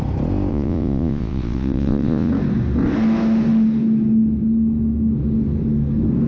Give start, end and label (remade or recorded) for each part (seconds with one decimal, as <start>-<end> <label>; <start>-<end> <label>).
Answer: 0.0-0.5 recorded; 0.5-2.3 remade; 2.3-6.3 recorded